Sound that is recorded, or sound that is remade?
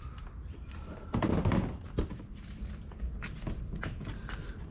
recorded